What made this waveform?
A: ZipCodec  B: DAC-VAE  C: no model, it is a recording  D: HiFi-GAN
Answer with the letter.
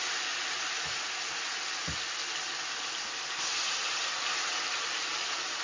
C